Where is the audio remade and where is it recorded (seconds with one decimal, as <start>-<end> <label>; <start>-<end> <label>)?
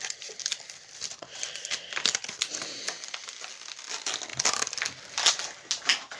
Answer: 0.0-0.5 recorded; 0.5-3.5 remade; 3.5-6.2 recorded